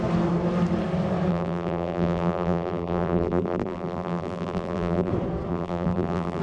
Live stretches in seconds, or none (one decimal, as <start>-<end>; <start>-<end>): 0.0-1.3; 5.1-5.5